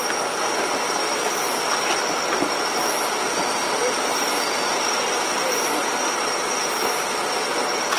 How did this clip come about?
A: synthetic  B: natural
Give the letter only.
B